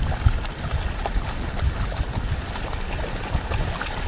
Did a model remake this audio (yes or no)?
no